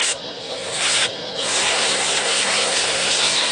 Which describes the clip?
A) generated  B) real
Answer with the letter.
A